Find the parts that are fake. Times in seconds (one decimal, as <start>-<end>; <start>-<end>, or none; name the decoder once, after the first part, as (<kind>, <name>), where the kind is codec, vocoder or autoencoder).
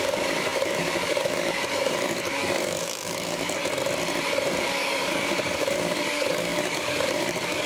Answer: 0.0-3.6 (codec, DAC); 4.6-7.7